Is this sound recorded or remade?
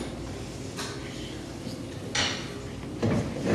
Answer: recorded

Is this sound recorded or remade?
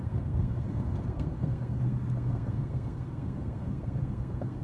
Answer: remade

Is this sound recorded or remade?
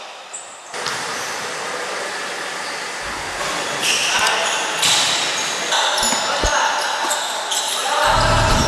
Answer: recorded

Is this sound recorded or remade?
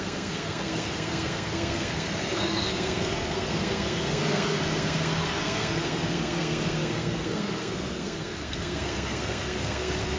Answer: remade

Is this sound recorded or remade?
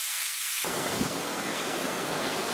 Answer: remade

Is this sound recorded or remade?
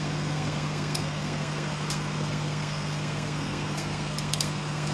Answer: remade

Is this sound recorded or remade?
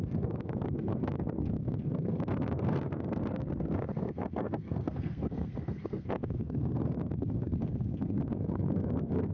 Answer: remade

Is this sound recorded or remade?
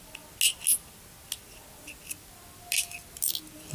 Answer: recorded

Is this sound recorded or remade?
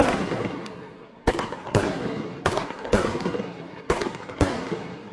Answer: remade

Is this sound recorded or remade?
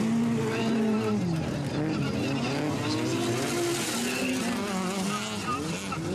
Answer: recorded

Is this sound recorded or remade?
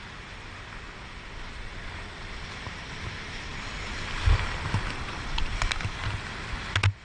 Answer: recorded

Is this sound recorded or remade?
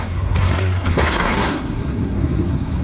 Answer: remade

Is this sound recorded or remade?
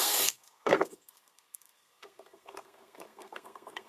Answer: remade